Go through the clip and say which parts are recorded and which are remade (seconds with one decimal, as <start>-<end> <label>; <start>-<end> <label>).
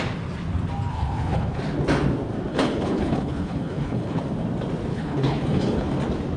0.0-0.9 recorded; 0.9-1.6 remade; 1.6-2.5 recorded; 2.5-4.2 remade; 4.2-4.9 recorded; 4.9-5.9 remade; 5.9-6.4 recorded